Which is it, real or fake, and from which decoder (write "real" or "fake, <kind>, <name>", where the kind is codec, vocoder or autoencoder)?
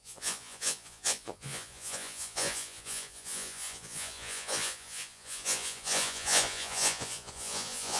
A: fake, vocoder, Vocos